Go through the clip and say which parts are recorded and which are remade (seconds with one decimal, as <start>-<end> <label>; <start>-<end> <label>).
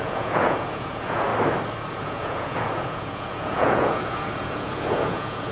0.0-1.3 remade; 1.3-1.9 recorded; 1.9-5.5 remade